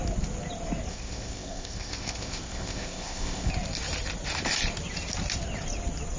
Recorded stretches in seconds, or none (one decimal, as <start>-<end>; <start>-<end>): 0.0-0.9; 3.5-6.2